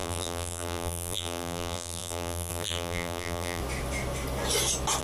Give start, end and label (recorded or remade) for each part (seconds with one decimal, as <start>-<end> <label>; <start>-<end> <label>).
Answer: 0.0-3.6 remade; 3.6-5.0 recorded